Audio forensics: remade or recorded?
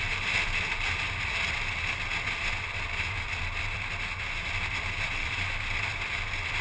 recorded